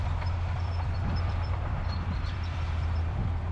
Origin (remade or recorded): remade